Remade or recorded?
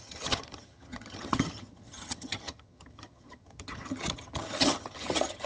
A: remade